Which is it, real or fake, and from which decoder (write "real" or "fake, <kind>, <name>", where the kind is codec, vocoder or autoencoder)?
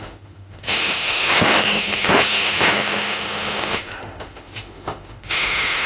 fake, autoencoder, DAC-VAE